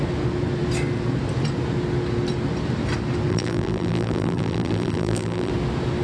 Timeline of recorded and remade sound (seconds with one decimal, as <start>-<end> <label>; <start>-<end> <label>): 0.0-3.3 recorded; 3.3-5.5 remade; 5.5-6.0 recorded